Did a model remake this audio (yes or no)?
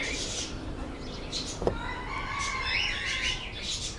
no